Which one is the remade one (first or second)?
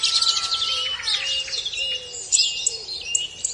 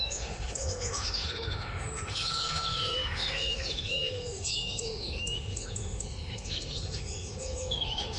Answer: second